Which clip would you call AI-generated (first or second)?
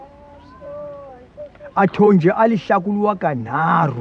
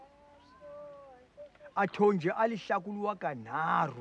first